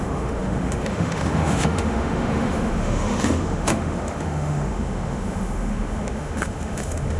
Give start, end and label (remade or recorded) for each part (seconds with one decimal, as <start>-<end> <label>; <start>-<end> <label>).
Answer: 0.0-7.2 remade